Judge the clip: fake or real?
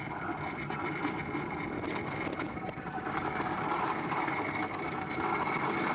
real